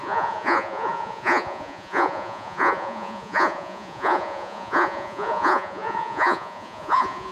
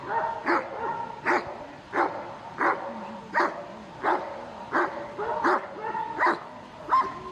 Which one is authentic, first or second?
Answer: second